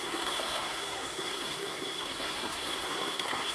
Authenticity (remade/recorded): remade